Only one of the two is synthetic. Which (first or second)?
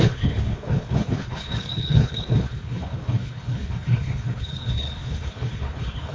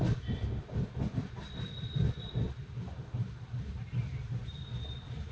first